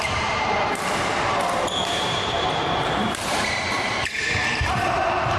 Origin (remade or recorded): remade